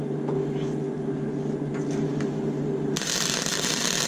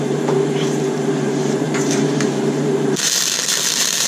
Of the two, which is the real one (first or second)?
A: first